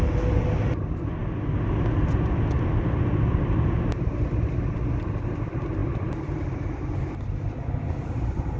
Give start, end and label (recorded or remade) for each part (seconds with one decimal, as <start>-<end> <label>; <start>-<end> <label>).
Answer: 0.0-8.6 recorded